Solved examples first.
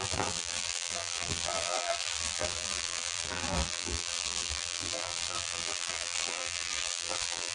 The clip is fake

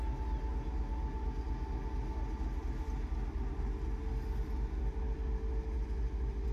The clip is real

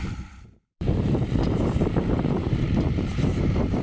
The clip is fake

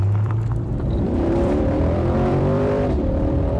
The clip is fake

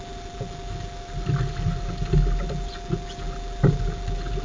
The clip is real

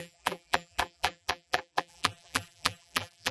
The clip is fake